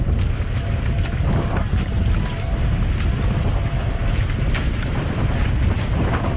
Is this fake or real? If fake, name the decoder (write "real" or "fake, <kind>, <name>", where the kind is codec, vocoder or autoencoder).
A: real